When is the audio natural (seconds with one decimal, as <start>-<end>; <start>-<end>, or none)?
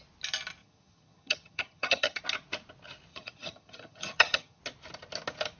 0.0-0.6; 2.2-3.1; 4.6-5.6